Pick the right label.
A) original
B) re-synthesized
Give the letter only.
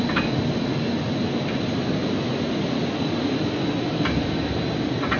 A